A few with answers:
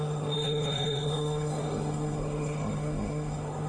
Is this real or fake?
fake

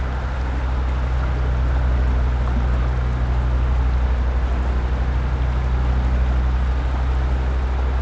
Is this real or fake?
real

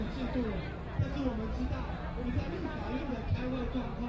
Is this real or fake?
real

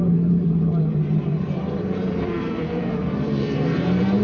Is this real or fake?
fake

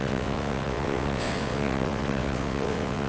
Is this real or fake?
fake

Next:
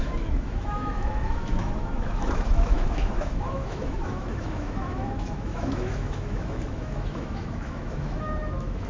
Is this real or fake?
fake